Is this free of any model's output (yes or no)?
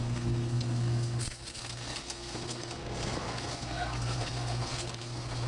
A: no